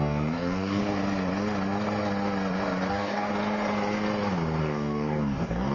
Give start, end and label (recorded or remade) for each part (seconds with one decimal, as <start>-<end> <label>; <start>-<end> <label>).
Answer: 0.0-0.8 remade; 0.8-2.9 recorded; 2.9-3.3 remade; 3.3-4.6 recorded; 4.6-5.7 remade